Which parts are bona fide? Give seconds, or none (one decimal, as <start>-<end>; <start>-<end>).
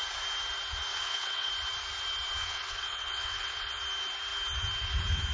0.0-0.9; 1.5-2.4; 3.8-5.3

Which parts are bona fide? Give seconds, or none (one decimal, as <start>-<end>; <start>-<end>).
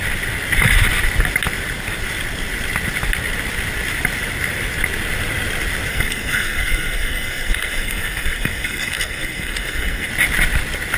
0.0-5.9; 10.1-11.0